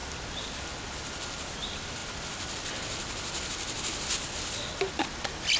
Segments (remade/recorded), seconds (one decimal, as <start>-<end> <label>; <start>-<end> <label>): 0.0-5.6 recorded